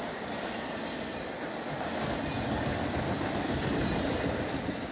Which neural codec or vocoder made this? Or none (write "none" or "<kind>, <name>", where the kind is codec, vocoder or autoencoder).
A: vocoder, BigVGAN v2